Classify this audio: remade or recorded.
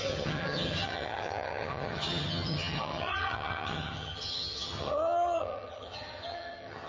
remade